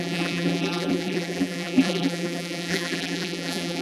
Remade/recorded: remade